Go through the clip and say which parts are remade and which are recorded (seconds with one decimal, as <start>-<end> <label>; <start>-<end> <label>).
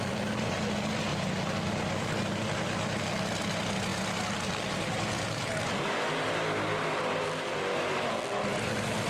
0.0-9.1 recorded